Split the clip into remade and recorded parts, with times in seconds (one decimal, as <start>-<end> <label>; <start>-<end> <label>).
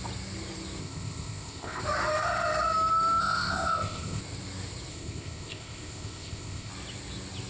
0.0-0.8 recorded; 0.8-1.8 remade; 1.8-3.2 recorded; 3.2-4.2 remade; 4.2-4.9 recorded; 4.9-6.7 remade; 6.7-7.5 recorded